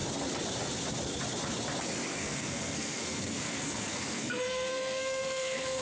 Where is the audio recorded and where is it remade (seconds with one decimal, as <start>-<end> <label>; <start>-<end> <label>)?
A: 0.0-2.1 recorded; 2.1-5.8 remade